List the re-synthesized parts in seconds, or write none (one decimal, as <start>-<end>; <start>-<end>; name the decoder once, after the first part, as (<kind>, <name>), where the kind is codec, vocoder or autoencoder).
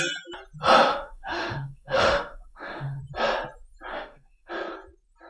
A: 0.9-3.0 (autoencoder, DAC-VAE); 3.9-4.5